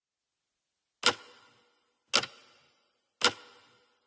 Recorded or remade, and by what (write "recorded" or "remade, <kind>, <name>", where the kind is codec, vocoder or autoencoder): recorded